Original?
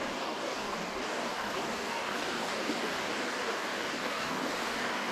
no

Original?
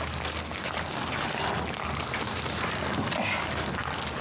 yes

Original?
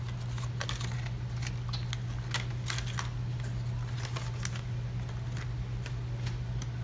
yes